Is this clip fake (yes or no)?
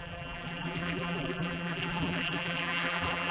yes